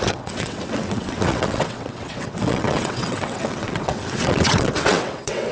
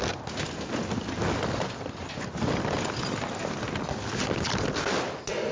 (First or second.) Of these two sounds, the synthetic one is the first